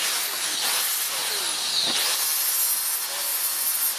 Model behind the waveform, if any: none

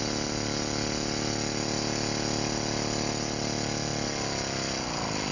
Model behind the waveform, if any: none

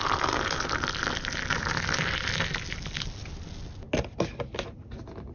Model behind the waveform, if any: none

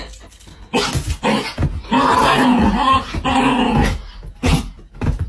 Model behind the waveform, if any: none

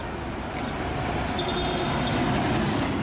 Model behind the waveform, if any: none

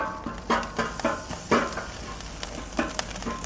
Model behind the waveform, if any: none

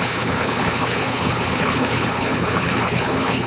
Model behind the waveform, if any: codec, HILCodec